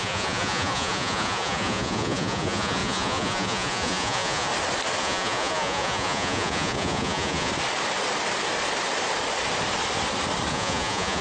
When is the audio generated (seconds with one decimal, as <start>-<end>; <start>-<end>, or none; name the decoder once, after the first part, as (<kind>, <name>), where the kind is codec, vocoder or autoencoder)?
0.0-4.5 (vocoder, Vocos); 5.0-7.5; 10.5-11.2